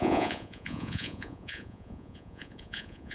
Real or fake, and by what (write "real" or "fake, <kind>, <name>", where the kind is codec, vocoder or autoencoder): fake, vocoder, Vocos